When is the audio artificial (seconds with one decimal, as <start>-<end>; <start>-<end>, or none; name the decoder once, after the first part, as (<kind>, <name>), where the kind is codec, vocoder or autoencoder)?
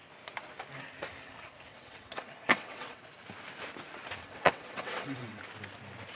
1.7-3.0 (vocoder, WaveNeXt); 4.2-5.4